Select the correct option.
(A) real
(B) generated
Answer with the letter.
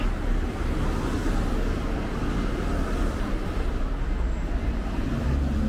A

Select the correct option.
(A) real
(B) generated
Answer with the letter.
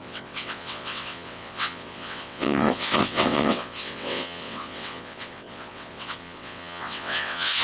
B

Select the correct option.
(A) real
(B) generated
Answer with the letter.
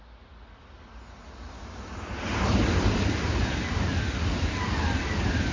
A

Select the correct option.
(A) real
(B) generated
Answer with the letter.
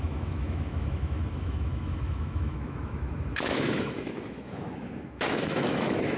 B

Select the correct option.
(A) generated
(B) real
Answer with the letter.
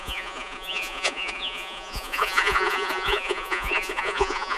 A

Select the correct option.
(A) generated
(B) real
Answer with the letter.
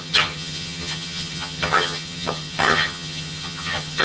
A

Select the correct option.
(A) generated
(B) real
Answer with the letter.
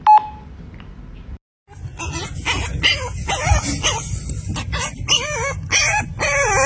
B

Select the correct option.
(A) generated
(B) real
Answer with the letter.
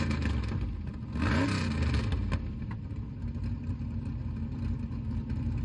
B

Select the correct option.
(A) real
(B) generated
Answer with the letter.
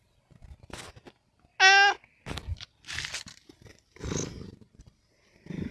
A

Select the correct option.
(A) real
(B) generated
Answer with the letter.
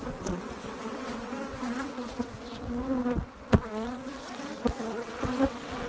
B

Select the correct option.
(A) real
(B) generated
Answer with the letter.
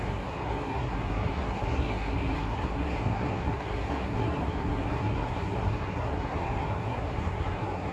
B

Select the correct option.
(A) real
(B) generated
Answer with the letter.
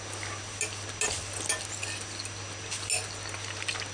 A